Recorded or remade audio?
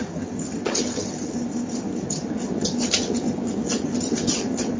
remade